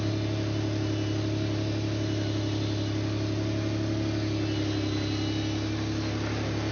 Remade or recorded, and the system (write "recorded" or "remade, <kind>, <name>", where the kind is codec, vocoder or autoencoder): recorded